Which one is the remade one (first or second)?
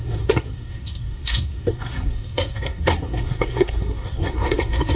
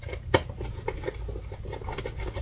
first